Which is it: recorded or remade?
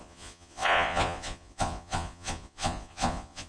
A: remade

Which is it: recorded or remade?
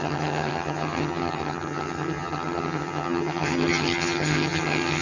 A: remade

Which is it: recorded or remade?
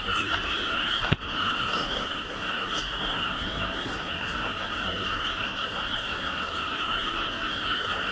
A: remade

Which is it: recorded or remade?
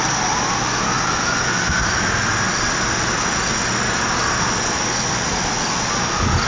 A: recorded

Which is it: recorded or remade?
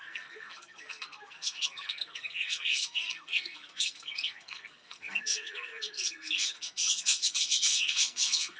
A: remade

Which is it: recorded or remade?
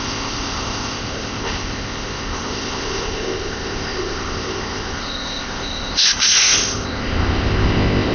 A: remade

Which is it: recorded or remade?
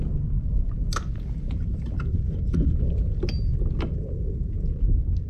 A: recorded